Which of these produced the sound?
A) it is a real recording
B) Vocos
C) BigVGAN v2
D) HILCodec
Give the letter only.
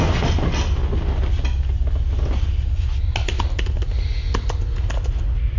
A